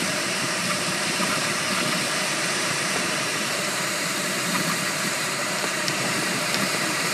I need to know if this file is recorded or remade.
remade